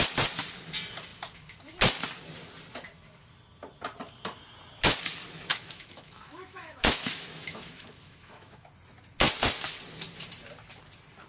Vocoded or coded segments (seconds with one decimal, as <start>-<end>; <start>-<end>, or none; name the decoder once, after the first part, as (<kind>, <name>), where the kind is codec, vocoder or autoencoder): 5.5-8.7 (autoencoder, DAC-VAE)